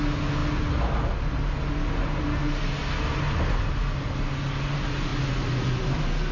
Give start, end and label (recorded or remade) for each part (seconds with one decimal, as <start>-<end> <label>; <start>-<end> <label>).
0.0-5.1 recorded; 5.1-5.7 remade; 5.7-6.3 recorded